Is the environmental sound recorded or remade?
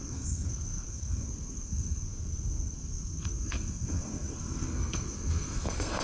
remade